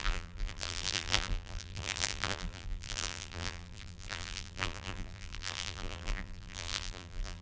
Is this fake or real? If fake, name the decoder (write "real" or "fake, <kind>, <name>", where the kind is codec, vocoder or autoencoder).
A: fake, vocoder, BigVGAN v2